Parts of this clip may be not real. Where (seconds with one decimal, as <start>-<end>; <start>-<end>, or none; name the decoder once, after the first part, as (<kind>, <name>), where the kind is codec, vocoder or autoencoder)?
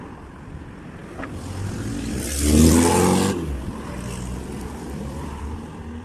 0.0-1.0 (vocoder, BigVGAN v2); 4.6-6.0